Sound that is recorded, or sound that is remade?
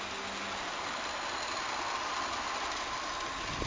recorded